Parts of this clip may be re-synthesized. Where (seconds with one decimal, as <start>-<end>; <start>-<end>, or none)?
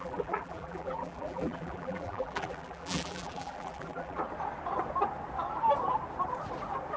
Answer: 0.0-4.2